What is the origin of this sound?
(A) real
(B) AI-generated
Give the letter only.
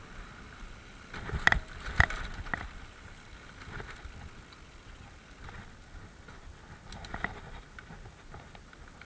A